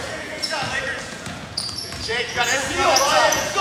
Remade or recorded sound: remade